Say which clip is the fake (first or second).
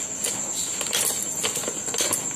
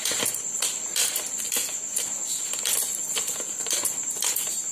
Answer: second